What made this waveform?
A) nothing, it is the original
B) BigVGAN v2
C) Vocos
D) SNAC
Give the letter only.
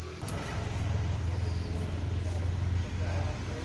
A